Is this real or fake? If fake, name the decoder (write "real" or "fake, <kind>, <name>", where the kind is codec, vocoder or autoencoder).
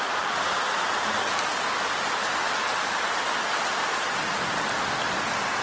real